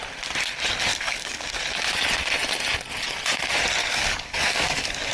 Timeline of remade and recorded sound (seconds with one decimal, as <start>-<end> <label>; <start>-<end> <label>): 0.0-0.9 recorded; 0.9-1.6 remade; 1.6-3.8 recorded; 3.8-5.1 remade